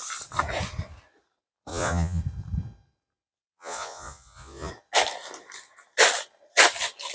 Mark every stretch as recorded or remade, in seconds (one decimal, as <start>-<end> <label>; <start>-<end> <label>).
0.0-1.7 recorded; 1.7-2.2 remade; 2.2-3.5 recorded; 3.5-4.7 remade; 4.7-7.1 recorded